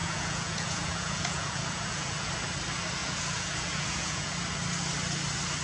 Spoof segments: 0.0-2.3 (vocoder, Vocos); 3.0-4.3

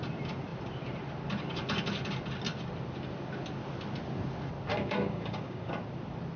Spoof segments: 4.7-5.7 (codec, DAC)

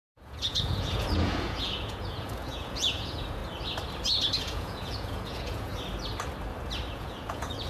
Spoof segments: 0.0-3.4 (vocoder, Vocos); 4.4-5.7; 6.9-7.7